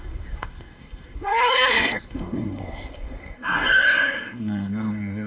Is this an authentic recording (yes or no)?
no